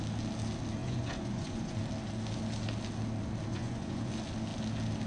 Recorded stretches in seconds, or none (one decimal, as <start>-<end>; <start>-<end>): 0.0-0.8; 1.8-3.5; 4.1-5.1

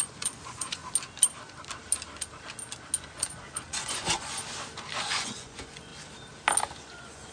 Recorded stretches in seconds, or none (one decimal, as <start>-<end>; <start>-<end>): 0.8-3.0; 4.4-5.0; 5.9-6.8